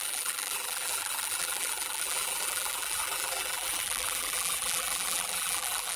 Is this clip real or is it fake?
fake